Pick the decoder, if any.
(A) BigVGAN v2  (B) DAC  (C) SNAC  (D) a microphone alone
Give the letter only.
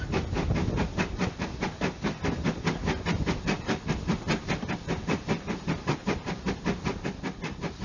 D